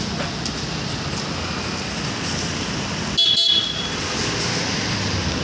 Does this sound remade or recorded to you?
recorded